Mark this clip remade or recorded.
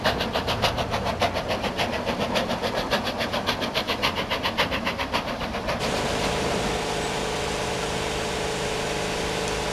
recorded